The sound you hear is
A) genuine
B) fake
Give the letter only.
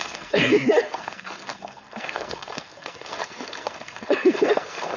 B